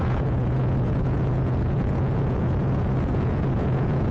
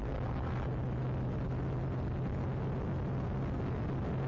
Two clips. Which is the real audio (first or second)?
second